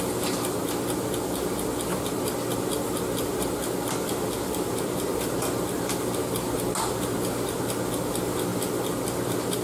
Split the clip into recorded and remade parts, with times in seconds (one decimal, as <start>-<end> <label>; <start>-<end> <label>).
0.0-9.6 recorded